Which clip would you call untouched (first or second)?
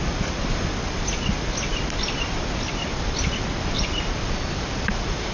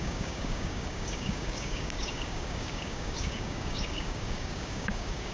first